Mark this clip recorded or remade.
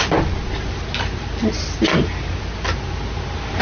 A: recorded